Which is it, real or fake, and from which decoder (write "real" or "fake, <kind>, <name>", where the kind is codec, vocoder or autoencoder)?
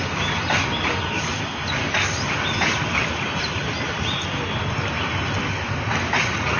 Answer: real